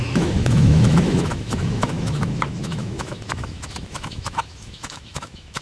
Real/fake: fake